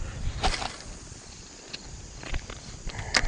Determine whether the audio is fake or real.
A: fake